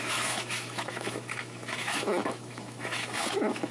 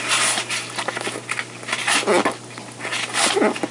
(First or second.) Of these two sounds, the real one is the second